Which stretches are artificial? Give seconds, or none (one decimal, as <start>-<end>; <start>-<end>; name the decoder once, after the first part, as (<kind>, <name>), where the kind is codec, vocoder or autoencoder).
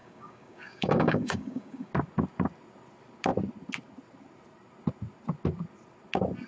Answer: 0.0-1.9 (codec, DAC)